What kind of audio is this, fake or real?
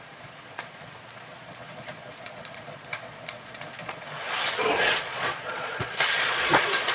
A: fake